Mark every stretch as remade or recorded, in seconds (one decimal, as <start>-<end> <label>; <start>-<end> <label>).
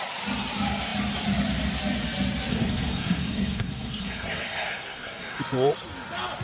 0.0-2.5 recorded; 2.5-5.4 remade; 5.4-6.4 recorded